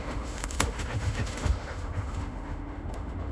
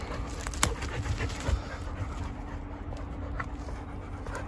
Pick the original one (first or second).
second